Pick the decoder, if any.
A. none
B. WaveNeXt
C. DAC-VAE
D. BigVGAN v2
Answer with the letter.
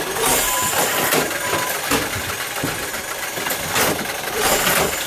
D